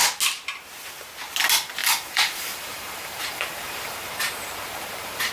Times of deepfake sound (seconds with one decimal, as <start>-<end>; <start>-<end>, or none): 1.8-5.3